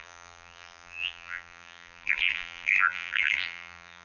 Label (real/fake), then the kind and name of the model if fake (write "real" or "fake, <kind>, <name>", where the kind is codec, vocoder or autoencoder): fake, vocoder, BigVGAN v2